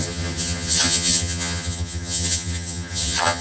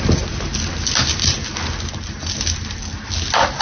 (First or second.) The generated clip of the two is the first